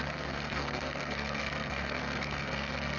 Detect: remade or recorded remade